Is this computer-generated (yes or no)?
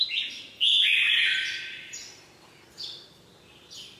no